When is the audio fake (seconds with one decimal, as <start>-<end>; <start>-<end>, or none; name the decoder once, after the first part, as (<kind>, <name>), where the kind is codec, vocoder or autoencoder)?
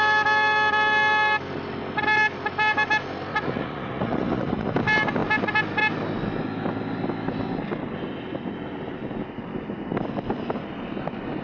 3.3-4.7 (vocoder, Vocos)